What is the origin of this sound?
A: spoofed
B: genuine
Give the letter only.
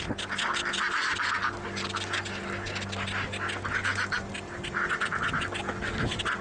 B